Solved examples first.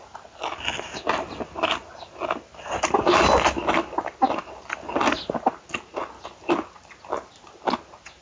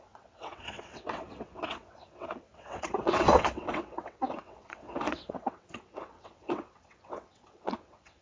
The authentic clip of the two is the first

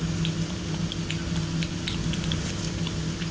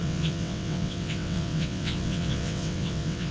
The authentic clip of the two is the first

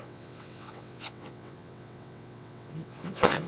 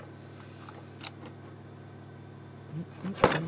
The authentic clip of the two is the second